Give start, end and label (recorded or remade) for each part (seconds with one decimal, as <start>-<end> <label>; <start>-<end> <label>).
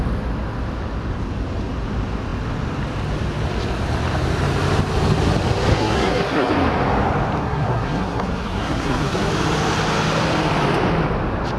0.0-5.7 recorded; 5.7-6.5 remade; 6.5-7.4 recorded; 7.4-9.3 remade; 9.3-11.6 recorded